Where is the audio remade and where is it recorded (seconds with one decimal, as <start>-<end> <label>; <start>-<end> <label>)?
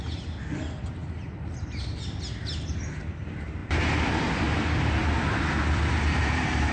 0.0-6.7 recorded